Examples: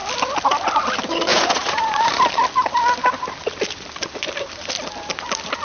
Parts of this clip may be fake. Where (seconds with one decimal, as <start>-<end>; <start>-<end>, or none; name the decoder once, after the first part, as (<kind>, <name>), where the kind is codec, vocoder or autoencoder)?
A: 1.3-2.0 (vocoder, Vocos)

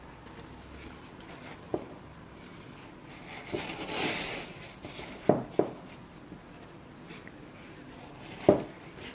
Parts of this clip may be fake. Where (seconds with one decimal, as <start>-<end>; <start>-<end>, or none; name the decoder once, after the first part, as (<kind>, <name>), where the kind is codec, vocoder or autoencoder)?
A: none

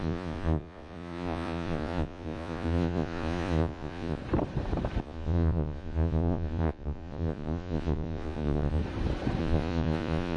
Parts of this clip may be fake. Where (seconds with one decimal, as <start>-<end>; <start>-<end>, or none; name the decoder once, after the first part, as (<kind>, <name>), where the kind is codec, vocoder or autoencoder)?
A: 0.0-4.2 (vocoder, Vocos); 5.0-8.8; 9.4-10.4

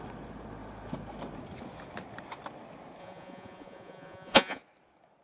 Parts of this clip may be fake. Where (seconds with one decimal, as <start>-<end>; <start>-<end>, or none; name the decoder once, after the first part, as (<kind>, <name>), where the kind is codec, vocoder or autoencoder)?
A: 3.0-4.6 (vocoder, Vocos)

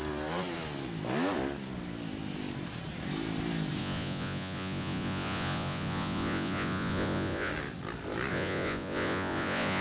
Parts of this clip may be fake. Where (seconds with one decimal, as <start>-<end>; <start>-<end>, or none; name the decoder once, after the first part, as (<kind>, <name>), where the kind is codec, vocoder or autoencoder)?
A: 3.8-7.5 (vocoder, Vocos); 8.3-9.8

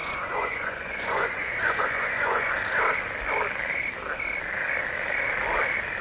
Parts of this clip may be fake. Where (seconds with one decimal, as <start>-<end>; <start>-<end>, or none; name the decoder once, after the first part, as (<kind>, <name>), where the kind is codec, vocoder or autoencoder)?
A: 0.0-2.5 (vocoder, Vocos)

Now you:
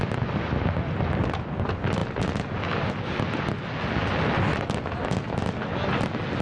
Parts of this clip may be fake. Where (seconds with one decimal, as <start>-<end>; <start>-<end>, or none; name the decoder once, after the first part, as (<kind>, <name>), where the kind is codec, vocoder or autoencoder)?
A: none

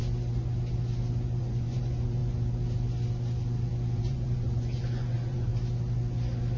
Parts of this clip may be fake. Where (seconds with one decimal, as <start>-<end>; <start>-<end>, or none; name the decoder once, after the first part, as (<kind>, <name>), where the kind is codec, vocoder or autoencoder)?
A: 1.4-2.2 (vocoder, Vocos); 4.0-5.5